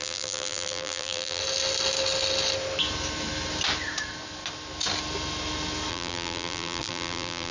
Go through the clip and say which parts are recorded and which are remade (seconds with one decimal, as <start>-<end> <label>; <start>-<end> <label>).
0.0-1.4 remade; 1.4-5.9 recorded; 5.9-7.5 remade